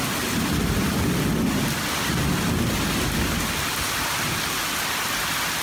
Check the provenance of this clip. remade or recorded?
recorded